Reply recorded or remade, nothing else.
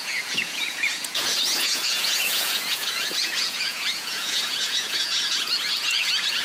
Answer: remade